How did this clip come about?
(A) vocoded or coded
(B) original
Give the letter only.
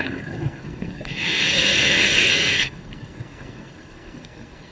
A